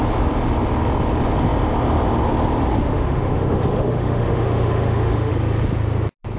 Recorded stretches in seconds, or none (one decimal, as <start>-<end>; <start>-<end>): 0.0-2.7; 5.3-6.4